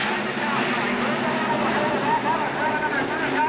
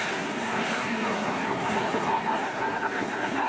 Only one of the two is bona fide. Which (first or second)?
first